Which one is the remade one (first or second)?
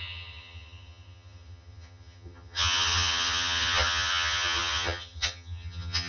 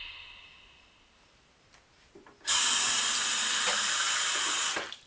first